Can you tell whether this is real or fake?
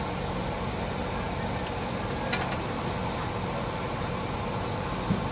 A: real